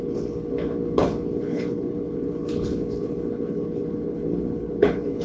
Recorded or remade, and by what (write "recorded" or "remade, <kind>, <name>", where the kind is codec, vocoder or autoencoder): remade, codec, HILCodec